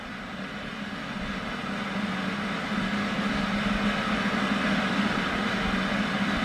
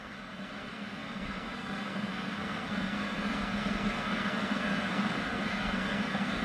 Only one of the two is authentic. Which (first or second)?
first